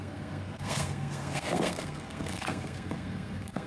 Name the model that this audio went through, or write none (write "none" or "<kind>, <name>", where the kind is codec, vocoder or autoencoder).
codec, SNAC